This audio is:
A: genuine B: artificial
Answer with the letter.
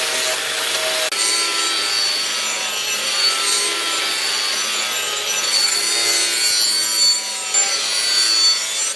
A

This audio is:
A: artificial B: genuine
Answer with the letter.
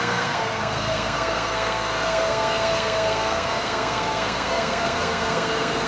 A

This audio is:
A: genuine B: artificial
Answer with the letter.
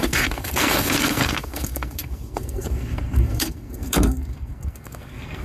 B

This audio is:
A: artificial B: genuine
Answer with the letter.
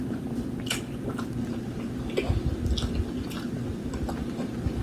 B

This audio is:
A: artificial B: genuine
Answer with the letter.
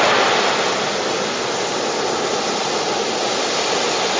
B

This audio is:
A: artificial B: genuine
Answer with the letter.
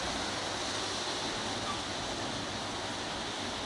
B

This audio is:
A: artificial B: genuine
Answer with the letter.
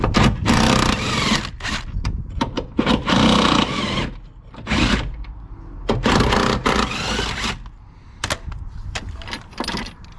B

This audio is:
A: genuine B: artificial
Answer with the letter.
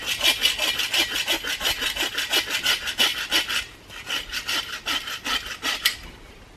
A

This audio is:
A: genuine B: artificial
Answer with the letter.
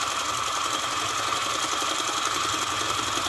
A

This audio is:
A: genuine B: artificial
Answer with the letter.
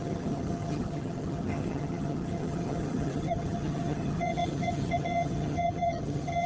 B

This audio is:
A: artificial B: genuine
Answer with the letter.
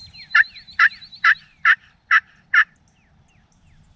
B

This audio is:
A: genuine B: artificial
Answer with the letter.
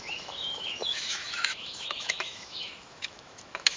B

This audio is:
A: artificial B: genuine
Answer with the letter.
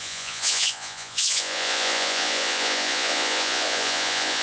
A